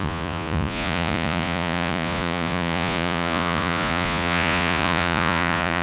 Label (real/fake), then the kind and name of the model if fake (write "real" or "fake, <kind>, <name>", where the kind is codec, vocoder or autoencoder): fake, vocoder, Vocos